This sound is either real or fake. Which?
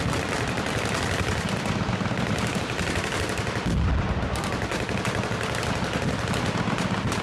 real